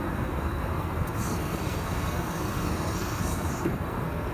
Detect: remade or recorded remade